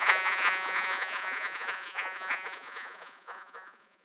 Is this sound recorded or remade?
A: remade